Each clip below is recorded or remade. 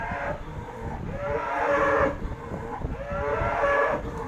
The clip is recorded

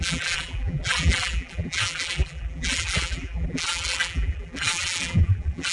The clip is remade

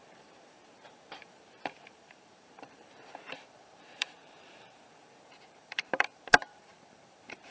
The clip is remade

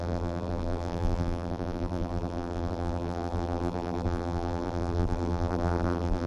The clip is remade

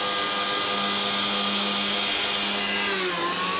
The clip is recorded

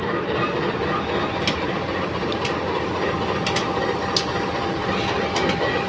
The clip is recorded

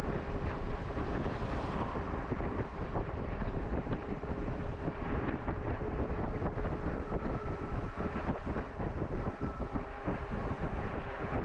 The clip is remade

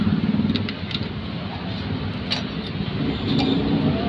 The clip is recorded